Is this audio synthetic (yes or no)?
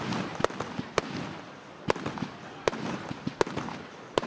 no